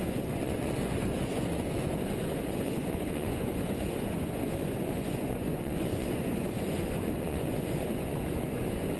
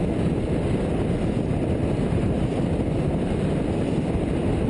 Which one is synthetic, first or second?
first